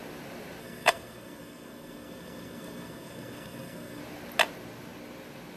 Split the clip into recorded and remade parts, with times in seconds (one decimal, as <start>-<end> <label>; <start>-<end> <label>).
0.0-0.6 recorded; 0.6-4.0 remade; 4.0-5.6 recorded